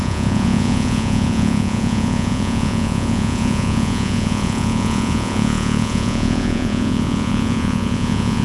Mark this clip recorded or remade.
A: remade